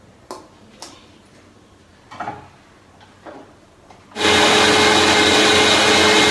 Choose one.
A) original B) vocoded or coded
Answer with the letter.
A